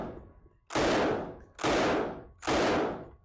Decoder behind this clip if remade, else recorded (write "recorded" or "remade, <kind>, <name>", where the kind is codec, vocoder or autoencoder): recorded